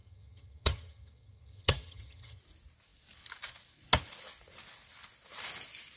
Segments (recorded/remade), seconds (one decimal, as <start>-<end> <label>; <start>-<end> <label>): 0.0-2.4 remade; 2.4-6.0 recorded